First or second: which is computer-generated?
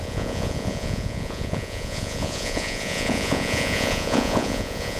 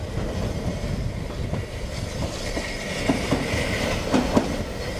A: first